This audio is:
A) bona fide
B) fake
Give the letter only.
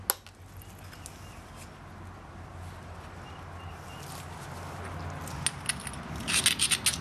A